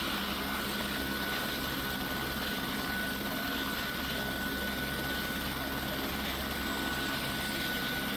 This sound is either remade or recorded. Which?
recorded